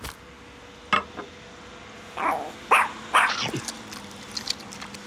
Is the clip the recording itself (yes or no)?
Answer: yes